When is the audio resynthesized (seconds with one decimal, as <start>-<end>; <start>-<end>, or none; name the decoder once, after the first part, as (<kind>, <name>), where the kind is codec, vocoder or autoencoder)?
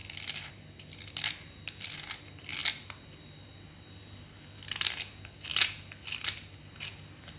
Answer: none